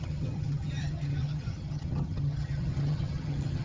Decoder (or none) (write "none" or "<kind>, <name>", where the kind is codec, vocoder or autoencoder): vocoder, HiFi-GAN